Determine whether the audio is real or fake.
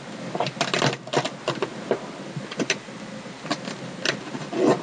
real